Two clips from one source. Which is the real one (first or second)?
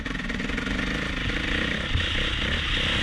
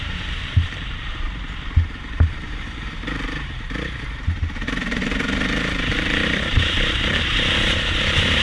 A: first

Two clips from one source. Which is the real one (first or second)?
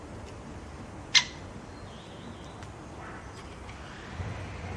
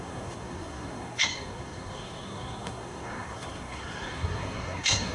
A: first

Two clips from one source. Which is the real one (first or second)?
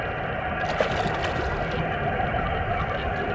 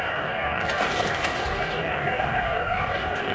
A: first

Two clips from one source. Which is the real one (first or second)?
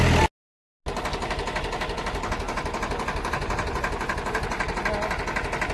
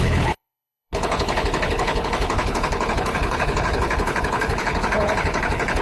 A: first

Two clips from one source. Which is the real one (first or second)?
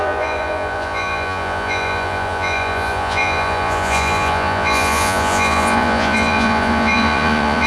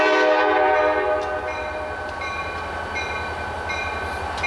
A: second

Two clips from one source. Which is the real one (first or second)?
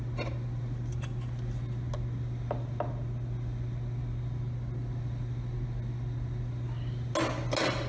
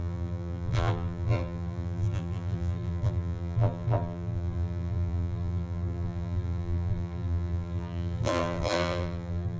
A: first